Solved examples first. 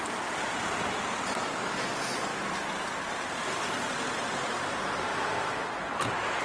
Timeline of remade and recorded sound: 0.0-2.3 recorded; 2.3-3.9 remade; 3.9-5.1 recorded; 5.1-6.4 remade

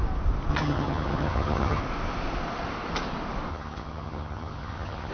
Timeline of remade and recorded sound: 0.0-0.5 recorded; 0.5-1.8 remade; 1.8-3.5 recorded; 3.5-5.1 remade

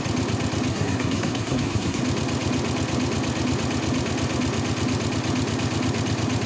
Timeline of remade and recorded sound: 0.0-0.7 recorded; 0.7-2.0 remade; 2.0-6.5 recorded

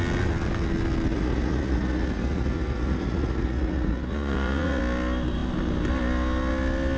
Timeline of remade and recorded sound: 0.0-1.1 recorded; 1.1-4.8 remade; 4.8-7.0 recorded

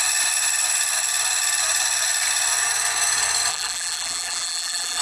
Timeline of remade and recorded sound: 0.0-3.5 recorded; 3.5-5.0 remade

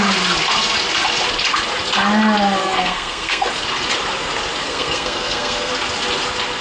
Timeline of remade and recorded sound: 0.0-2.6 recorded; 2.6-3.5 remade; 3.5-4.6 recorded; 4.6-5.7 remade; 5.7-6.6 recorded